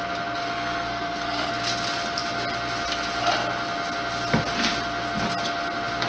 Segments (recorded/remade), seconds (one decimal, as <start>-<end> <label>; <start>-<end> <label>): 0.0-0.4 recorded; 0.4-1.5 remade; 1.5-6.1 recorded